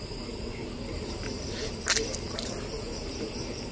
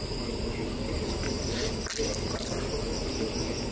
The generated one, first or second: first